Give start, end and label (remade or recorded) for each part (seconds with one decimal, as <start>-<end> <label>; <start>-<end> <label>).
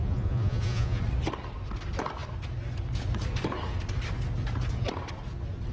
0.0-1.0 remade; 1.0-5.7 recorded